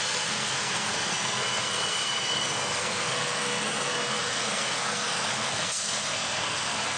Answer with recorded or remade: remade